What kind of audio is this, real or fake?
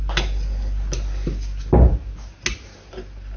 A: real